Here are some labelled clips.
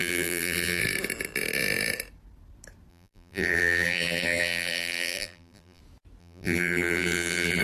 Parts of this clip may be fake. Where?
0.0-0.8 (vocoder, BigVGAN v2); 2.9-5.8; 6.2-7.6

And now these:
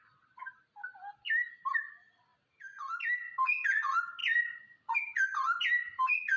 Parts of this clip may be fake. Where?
none